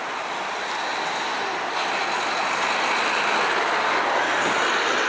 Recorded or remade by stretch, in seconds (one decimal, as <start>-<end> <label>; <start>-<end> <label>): 0.0-5.1 recorded